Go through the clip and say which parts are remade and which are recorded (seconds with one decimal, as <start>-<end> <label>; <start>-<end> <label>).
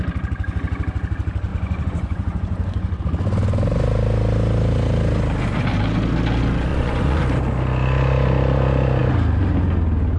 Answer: 0.0-1.5 recorded; 1.5-3.0 remade; 3.0-6.7 recorded; 6.7-7.2 remade; 7.2-10.2 recorded